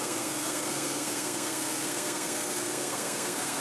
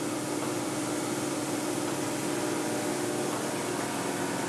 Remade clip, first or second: first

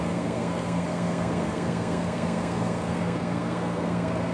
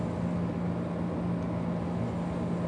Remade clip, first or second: first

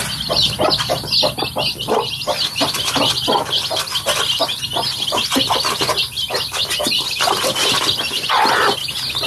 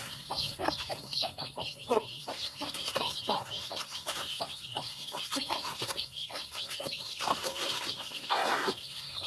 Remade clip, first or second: second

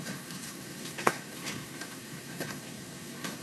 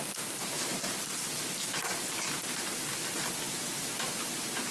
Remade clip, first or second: first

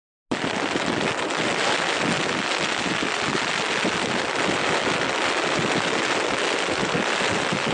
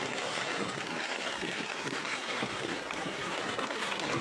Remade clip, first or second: second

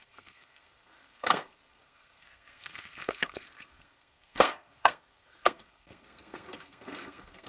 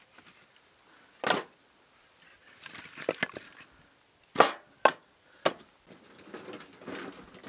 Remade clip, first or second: first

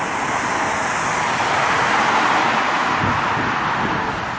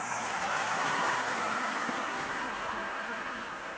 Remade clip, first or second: second